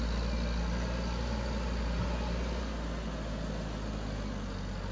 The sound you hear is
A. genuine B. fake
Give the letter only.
A